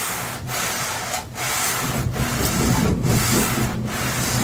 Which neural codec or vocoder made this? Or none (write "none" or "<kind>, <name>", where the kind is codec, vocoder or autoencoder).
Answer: none